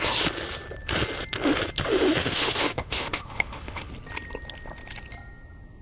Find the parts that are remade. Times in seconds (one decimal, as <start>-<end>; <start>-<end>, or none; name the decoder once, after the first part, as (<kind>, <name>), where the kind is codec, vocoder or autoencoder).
2.2-3.9 (autoencoder, DAC-VAE)